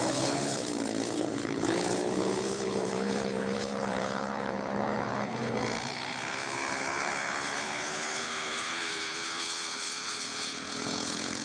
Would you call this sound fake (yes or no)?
yes